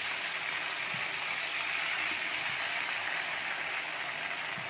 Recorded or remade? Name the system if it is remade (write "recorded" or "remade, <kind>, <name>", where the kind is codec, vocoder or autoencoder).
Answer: recorded